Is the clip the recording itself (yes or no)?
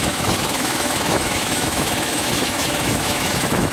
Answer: no